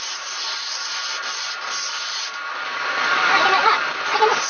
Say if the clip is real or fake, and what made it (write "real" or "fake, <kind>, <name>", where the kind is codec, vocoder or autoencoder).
fake, vocoder, BigVGAN v2